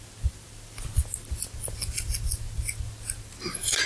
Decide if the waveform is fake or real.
real